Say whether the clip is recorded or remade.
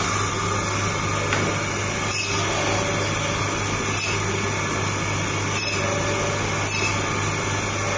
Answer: recorded